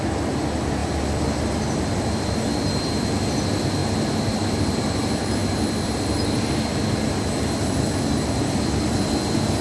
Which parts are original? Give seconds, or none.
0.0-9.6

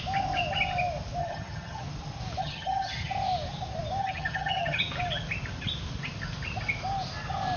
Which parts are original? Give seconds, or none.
0.0-1.2; 1.8-2.4; 3.1-4.0; 4.8-7.6

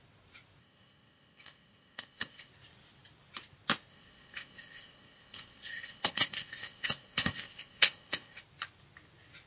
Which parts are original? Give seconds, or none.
0.0-0.6; 2.5-3.9; 8.4-9.5

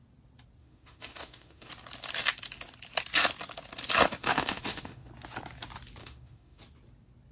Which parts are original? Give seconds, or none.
0.0-0.6; 1.7-4.2; 5.1-6.0; 6.6-7.3

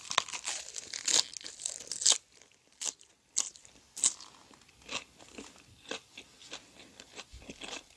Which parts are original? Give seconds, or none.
0.0-6.4; 7.1-8.0

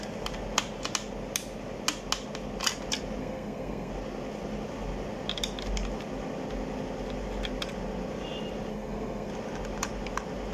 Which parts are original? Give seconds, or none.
0.0-3.2; 3.9-8.7; 9.3-10.5